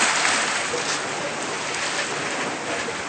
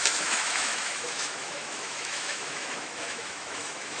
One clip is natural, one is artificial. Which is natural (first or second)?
first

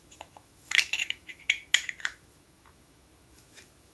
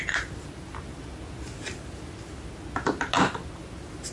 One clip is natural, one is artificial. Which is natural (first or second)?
second